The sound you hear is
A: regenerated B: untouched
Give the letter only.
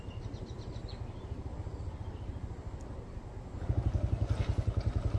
B